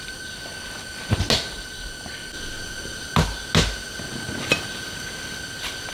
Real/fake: real